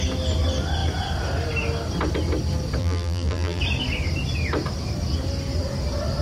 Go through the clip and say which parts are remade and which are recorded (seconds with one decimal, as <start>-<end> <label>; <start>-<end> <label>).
0.0-2.8 recorded; 2.8-3.6 remade; 3.6-6.2 recorded